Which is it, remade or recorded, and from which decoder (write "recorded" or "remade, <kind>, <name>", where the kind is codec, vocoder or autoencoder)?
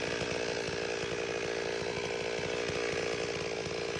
recorded